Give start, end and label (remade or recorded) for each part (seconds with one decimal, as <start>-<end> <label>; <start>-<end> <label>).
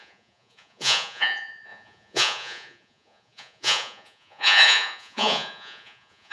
0.0-6.3 remade